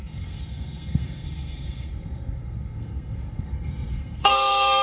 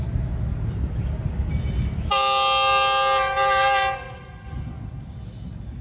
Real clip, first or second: second